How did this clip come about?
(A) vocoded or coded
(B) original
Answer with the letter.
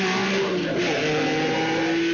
B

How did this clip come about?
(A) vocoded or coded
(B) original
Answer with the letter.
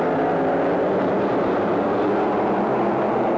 B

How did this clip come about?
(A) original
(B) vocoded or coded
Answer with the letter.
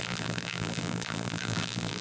B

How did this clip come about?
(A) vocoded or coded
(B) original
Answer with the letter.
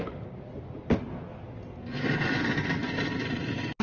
B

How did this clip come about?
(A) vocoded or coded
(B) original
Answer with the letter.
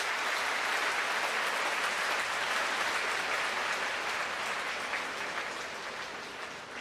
B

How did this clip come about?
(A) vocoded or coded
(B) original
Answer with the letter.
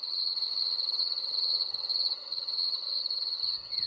A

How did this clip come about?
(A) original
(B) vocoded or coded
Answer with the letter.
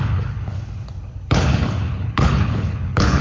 B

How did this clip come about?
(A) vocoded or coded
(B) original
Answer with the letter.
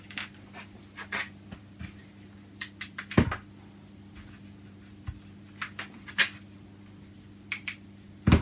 B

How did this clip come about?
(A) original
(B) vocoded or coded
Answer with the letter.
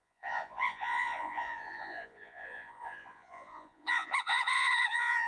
B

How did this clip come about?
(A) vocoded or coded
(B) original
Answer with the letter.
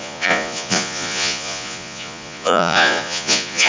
A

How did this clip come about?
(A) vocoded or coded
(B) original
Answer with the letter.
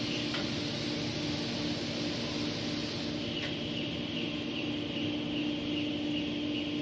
B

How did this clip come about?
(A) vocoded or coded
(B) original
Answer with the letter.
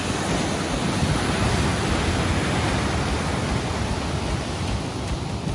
B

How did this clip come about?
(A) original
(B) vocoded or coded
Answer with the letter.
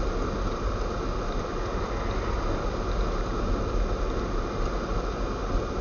A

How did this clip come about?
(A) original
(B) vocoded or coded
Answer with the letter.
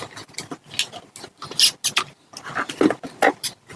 A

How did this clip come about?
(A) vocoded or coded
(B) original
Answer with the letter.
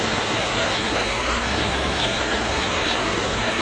A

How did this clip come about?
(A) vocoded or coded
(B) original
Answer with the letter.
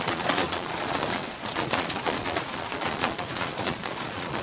A